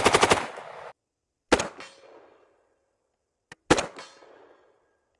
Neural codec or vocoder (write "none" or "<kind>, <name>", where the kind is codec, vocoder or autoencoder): none